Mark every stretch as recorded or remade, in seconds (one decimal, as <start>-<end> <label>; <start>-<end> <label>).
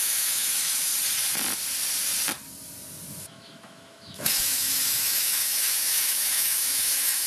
0.0-0.9 remade; 0.9-3.2 recorded; 3.2-7.3 remade